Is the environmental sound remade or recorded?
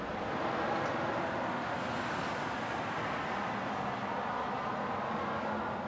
recorded